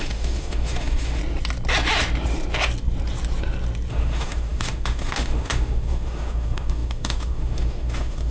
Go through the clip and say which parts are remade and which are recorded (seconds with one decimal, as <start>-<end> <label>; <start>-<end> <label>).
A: 0.0-1.2 remade; 1.2-3.9 recorded; 3.9-8.3 remade